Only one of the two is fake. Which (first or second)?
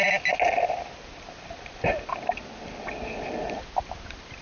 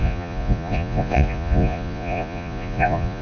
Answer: second